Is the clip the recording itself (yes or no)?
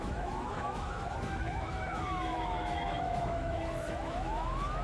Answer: no